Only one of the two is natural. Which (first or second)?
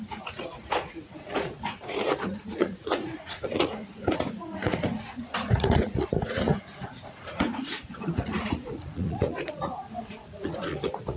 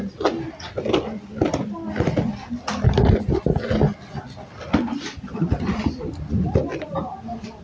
second